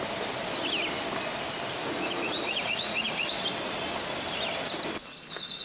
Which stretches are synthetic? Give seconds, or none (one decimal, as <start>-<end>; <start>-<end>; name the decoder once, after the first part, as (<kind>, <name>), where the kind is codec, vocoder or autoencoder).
1.8-3.3 (vocoder, Vocos)